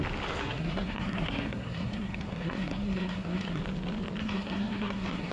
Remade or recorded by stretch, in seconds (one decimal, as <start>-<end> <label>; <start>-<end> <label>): 0.0-0.4 recorded; 0.4-3.6 remade; 3.6-4.2 recorded; 4.2-5.3 remade